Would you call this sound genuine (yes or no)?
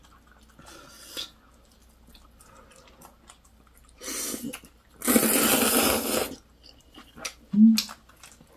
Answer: yes